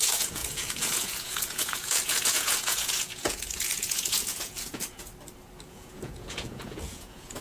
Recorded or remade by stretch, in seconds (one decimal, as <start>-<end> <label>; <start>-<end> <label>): 0.0-5.1 remade; 5.1-5.7 recorded; 5.7-7.4 remade